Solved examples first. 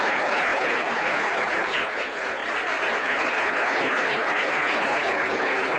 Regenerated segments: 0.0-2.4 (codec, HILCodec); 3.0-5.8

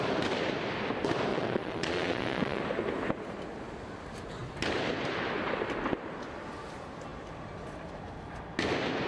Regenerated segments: 1.3-2.6 (vocoder, Vocos)